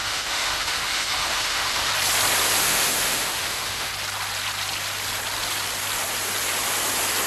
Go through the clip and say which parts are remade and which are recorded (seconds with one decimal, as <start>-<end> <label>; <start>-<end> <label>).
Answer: 0.0-1.9 remade; 1.9-2.6 recorded; 2.6-3.9 remade; 3.9-7.3 recorded